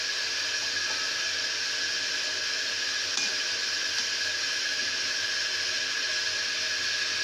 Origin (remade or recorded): recorded